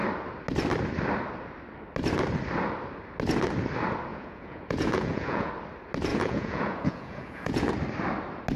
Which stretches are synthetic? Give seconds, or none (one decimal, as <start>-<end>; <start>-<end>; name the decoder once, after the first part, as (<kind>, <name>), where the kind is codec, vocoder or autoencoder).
4.1-5.5 (vocoder, Vocos); 6.1-7.7